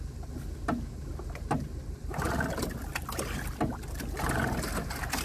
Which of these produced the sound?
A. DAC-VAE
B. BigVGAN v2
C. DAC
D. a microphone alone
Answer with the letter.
D